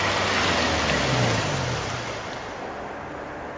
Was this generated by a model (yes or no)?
no